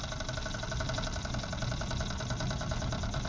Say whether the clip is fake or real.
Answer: real